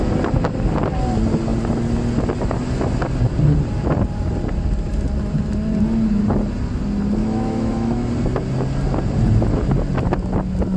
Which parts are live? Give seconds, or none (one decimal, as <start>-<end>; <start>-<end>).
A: 0.0-7.2; 8.1-10.8